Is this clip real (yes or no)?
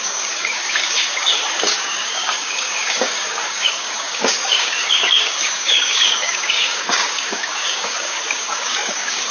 no